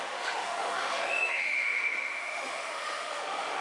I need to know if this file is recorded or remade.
remade